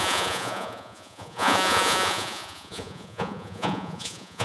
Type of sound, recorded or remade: remade